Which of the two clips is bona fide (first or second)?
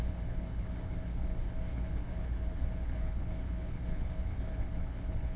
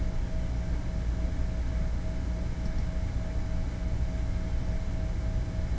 second